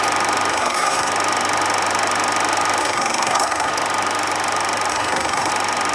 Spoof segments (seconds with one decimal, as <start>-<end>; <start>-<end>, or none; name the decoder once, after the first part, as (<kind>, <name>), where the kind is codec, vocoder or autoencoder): 0.5-1.1 (codec, SNAC); 2.8-3.7; 4.9-5.5